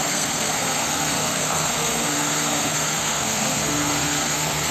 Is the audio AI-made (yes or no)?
yes